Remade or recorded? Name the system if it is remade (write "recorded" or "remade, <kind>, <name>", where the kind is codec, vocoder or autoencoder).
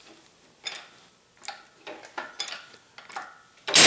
recorded